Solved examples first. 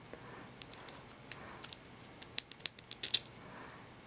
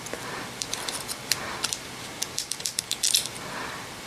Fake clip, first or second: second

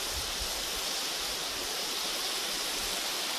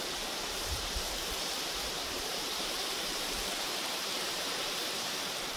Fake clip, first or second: second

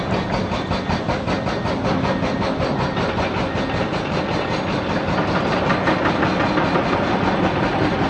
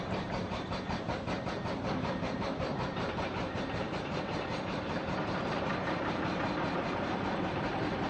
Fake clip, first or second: second